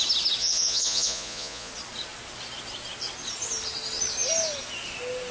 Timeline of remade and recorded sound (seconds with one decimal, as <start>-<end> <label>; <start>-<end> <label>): 0.0-0.4 recorded; 0.4-1.7 remade; 1.7-5.3 recorded